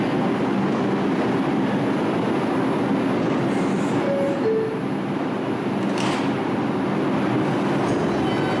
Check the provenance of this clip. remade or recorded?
recorded